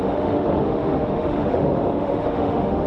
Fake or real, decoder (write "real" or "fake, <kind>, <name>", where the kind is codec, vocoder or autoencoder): fake, autoencoder, DAC-VAE